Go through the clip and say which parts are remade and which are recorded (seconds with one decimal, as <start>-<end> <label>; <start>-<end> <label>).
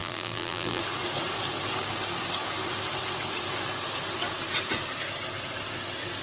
0.0-0.8 remade; 0.8-6.2 recorded